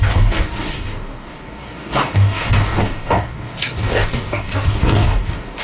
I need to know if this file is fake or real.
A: fake